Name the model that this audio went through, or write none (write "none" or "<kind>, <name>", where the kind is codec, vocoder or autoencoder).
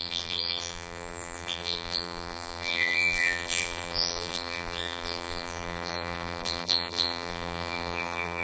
vocoder, BigVGAN v2